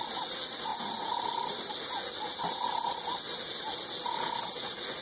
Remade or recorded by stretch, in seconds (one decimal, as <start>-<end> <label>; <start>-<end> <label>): 0.0-5.0 recorded